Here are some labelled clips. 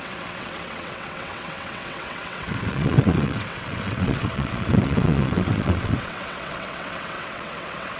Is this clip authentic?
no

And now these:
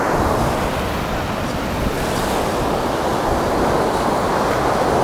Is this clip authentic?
yes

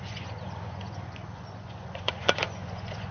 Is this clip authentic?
no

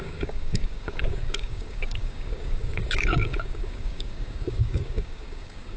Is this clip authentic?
no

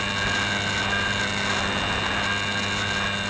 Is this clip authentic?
yes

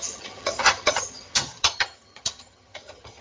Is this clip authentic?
no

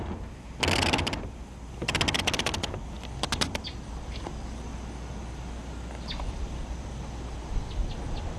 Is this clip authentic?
yes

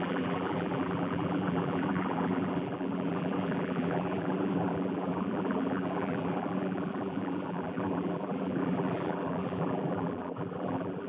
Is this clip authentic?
no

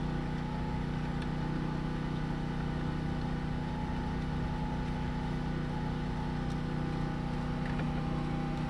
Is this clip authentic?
yes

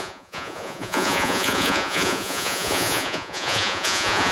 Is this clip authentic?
no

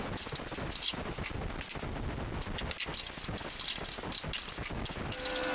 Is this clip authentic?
yes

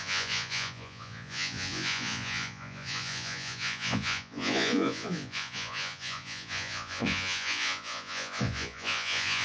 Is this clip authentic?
no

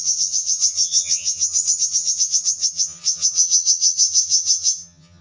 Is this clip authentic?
no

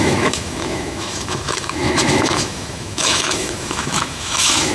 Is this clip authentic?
no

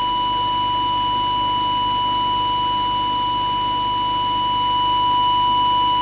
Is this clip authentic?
yes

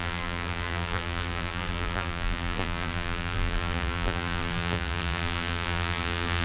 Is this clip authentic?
no